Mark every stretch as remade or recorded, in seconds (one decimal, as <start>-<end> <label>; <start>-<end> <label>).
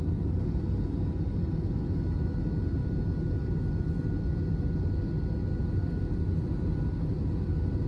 0.0-7.9 recorded